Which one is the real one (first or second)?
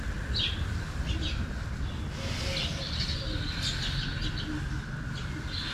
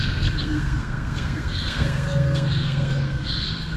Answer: first